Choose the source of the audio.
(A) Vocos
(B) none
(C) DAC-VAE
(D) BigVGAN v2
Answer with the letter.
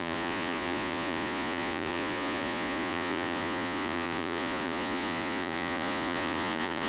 A